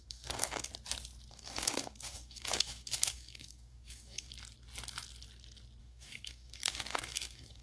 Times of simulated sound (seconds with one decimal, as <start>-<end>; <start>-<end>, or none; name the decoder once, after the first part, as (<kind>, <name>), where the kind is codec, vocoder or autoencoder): 0.0-0.7 (codec, DAC); 1.3-4.3; 5.8-7.6